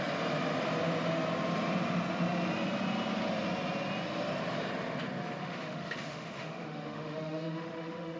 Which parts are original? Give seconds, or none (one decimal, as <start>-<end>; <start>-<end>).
0.0-5.4